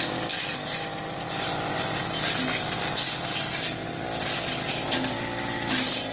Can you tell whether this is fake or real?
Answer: real